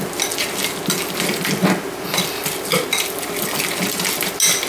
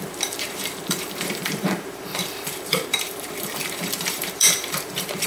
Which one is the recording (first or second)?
first